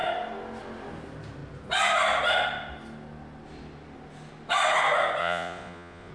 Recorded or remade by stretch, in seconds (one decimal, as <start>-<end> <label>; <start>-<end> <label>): 0.0-5.2 recorded; 5.2-6.1 remade